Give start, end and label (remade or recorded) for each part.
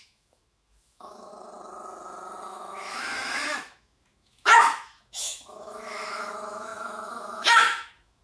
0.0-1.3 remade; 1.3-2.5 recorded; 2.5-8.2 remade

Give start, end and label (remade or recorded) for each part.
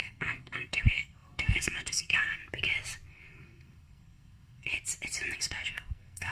0.0-2.4 remade; 2.4-3.1 recorded; 3.1-4.7 remade; 4.7-5.4 recorded; 5.4-6.3 remade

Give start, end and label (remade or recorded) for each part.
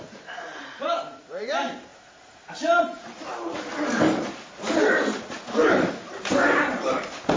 0.0-7.4 remade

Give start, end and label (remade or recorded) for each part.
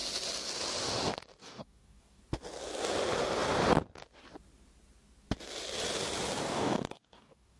0.0-1.4 recorded; 1.4-2.2 remade; 2.2-6.4 recorded; 6.4-7.6 remade